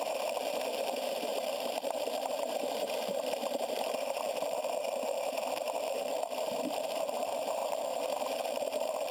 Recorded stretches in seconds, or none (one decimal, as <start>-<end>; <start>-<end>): none